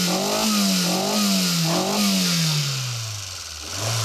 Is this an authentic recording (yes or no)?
yes